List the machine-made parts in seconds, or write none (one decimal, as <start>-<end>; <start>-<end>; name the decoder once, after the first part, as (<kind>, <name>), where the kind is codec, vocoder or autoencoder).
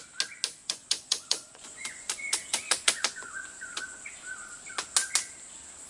0.6-4.1 (vocoder, Vocos)